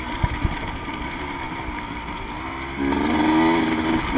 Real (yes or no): yes